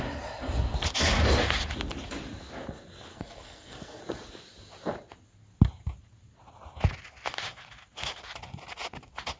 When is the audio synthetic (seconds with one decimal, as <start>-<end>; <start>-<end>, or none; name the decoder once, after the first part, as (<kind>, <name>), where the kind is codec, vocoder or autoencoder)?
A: 3.1-4.0 (codec, SNAC)